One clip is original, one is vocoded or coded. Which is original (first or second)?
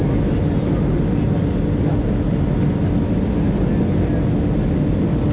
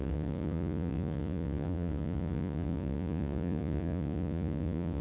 first